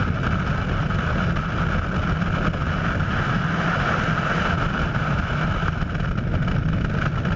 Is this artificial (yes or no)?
no